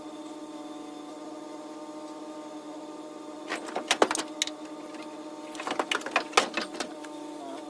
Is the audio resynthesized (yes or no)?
no